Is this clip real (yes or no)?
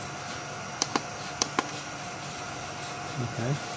yes